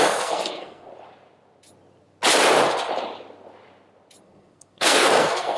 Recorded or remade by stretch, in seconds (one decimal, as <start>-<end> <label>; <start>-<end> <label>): 0.0-0.9 remade; 0.9-4.2 recorded; 4.2-5.6 remade